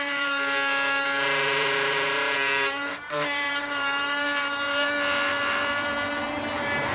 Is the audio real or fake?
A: fake